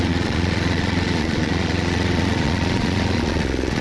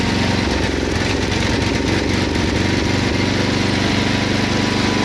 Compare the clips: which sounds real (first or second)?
second